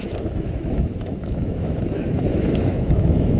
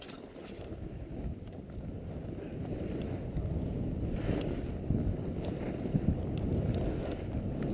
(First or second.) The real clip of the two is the second